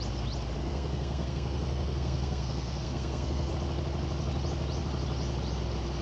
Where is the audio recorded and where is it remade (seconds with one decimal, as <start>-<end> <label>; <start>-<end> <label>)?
0.0-0.6 recorded; 0.6-3.5 remade; 3.5-6.0 recorded